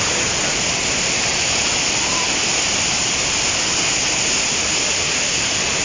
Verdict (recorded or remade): recorded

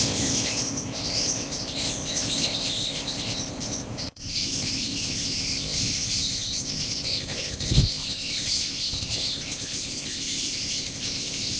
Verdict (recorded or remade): remade